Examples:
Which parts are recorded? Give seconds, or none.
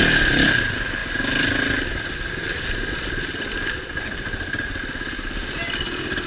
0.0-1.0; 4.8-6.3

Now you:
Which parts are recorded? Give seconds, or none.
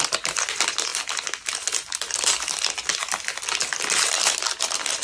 0.0-5.0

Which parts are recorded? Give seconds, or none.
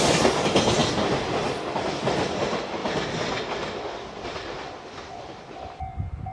0.8-1.9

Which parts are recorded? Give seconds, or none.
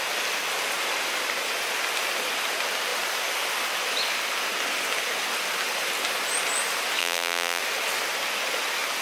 0.0-7.0; 7.6-9.0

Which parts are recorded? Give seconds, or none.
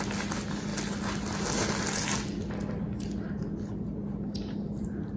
0.0-5.2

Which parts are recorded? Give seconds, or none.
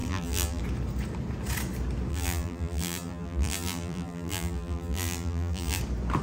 0.6-2.1; 5.8-6.2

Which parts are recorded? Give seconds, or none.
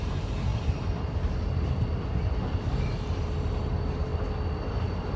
0.5-3.6; 4.1-4.7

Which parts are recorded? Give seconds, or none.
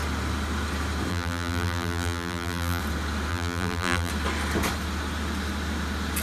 0.0-1.1; 2.8-3.3; 4.1-6.2